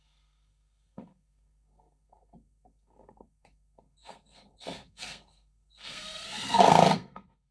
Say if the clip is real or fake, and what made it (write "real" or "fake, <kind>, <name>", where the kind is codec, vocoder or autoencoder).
fake, codec, SNAC